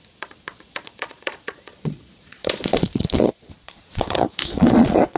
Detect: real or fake fake